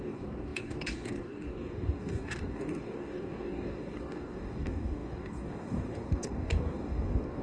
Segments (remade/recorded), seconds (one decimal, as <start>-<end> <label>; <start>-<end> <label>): 0.0-7.4 remade